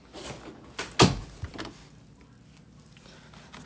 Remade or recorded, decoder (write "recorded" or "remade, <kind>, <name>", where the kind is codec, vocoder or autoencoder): recorded